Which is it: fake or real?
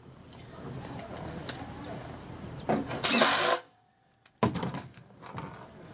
real